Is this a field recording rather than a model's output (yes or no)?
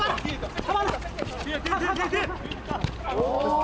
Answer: yes